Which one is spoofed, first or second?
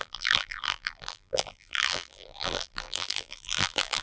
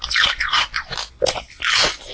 first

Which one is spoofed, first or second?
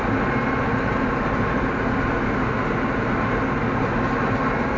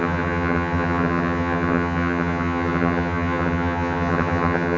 second